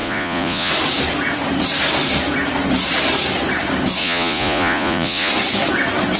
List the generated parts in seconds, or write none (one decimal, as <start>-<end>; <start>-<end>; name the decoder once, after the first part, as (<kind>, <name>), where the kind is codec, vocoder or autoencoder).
0.0-0.7 (vocoder, Vocos); 4.0-5.3